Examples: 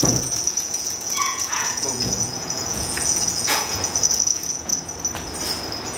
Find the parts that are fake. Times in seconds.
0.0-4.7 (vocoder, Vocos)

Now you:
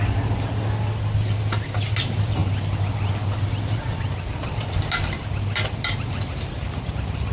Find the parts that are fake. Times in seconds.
none

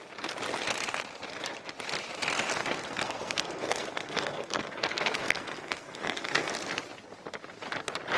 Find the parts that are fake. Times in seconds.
2.6-6.5 (codec, SNAC)